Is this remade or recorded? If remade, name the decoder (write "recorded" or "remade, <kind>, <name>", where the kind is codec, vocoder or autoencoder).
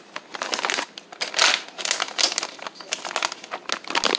recorded